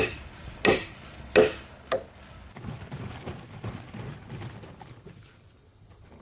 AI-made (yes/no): no